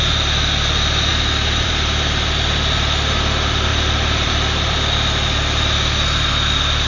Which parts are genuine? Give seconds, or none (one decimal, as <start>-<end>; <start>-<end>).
0.0-1.1; 1.7-3.7; 4.3-6.9